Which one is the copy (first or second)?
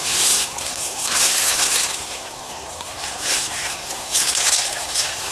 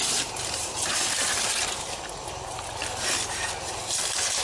first